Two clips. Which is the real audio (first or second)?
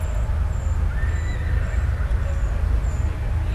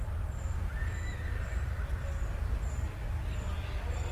first